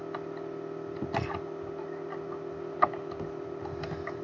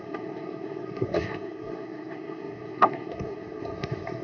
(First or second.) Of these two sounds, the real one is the first